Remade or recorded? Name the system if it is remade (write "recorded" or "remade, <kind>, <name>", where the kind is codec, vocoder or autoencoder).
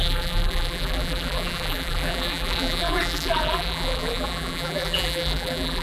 remade, vocoder, BigVGAN v2